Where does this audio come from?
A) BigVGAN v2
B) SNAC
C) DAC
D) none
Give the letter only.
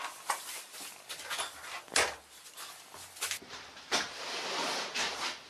D